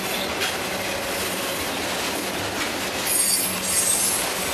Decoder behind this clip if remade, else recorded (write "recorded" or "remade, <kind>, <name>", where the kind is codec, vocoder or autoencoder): recorded